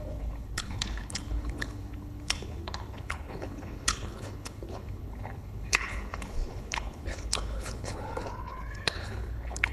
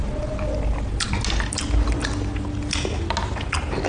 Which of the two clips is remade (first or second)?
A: first